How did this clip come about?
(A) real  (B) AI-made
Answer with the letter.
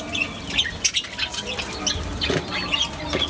A